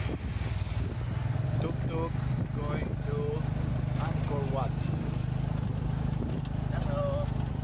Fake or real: real